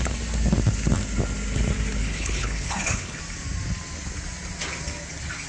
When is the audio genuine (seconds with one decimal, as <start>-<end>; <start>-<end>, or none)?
0.0-2.0; 3.2-5.5

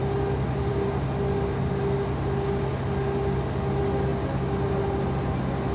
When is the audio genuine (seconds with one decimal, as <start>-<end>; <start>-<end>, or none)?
0.0-5.7

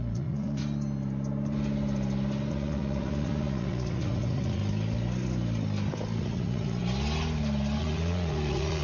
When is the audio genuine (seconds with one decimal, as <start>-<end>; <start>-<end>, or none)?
0.6-2.5; 4.6-6.2; 6.8-7.8

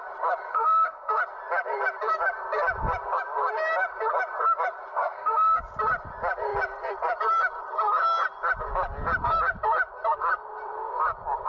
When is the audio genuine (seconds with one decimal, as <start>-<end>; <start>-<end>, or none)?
0.0-0.5; 1.2-4.9; 5.6-11.5

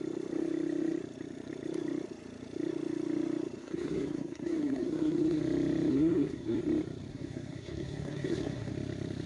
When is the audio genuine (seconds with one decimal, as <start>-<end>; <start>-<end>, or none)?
0.0-3.6; 5.4-5.9; 6.6-7.1; 8.7-9.3